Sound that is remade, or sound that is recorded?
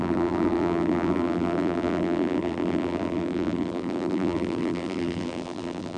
remade